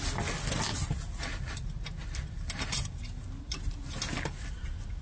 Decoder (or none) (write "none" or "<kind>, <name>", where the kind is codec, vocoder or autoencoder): none